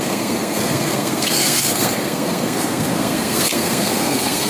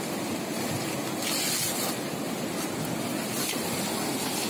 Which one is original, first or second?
second